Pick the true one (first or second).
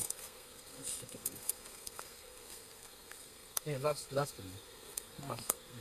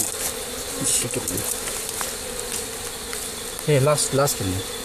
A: second